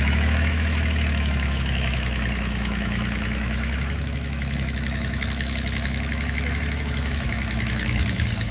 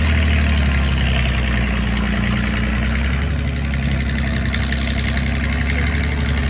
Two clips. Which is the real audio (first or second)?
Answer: second